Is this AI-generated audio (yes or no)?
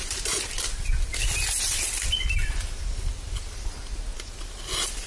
no